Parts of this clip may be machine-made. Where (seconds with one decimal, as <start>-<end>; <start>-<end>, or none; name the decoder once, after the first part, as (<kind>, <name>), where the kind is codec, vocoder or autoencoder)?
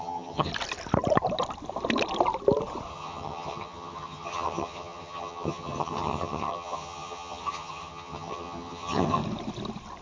0.0-0.5 (vocoder, HiFi-GAN); 2.9-9.2